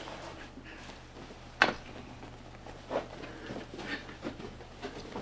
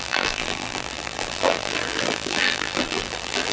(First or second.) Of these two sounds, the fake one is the second